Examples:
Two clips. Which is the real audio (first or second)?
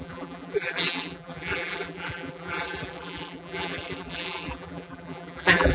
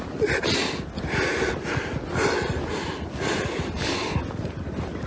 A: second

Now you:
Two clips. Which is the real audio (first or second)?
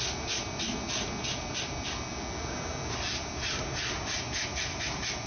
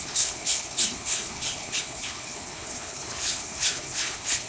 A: first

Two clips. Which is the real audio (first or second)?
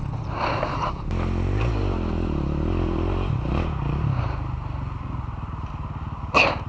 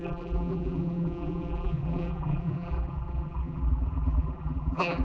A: first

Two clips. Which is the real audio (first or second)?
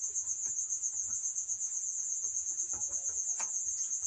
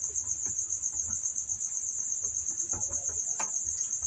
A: second